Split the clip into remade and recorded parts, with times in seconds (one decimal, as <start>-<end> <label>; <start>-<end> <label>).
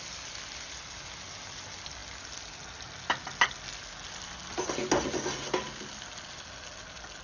0.0-7.2 recorded